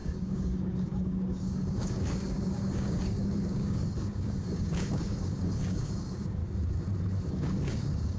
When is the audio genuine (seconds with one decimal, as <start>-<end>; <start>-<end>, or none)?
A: 6.4-7.3